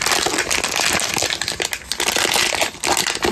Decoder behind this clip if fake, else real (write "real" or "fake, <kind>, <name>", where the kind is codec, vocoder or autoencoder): real